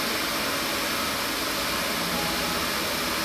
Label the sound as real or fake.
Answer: real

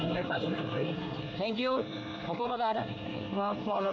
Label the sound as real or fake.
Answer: fake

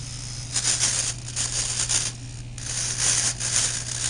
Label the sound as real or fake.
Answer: real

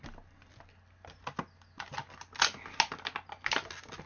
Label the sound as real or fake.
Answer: real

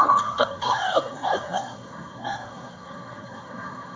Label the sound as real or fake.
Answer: fake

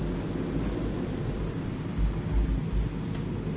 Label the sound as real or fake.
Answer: real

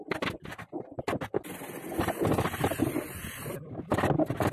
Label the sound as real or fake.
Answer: real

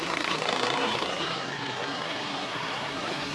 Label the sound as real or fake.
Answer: fake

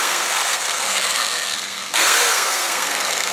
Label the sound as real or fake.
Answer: fake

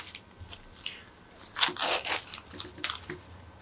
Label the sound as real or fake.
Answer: real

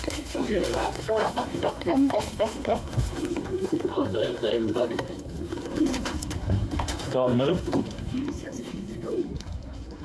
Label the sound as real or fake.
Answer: fake